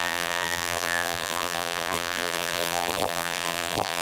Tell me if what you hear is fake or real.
fake